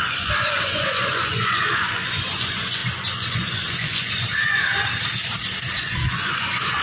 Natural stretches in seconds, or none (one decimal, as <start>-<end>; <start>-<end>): 4.3-5.8

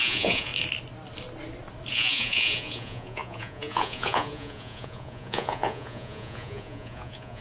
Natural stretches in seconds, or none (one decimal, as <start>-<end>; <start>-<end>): 0.5-1.9

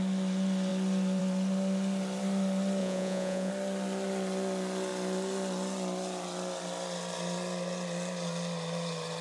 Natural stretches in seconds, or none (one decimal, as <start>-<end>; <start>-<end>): 0.0-2.8; 3.5-9.2

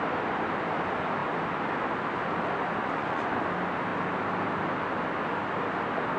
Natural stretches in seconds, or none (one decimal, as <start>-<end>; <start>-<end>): 0.0-2.8; 3.3-6.2

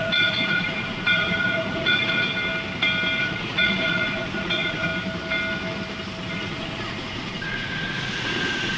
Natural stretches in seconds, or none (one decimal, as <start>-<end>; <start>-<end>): 2.3-3.2; 4.9-6.3

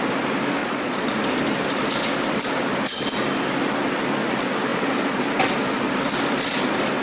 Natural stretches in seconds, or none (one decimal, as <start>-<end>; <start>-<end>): 0.0-0.6; 1.1-7.0